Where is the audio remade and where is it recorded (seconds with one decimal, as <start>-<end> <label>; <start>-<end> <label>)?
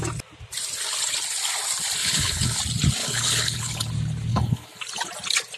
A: 0.0-2.0 recorded; 2.0-2.6 remade; 2.6-3.0 recorded; 3.0-3.9 remade; 3.9-4.3 recorded; 4.3-4.8 remade; 4.8-5.6 recorded